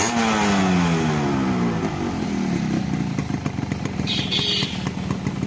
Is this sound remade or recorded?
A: recorded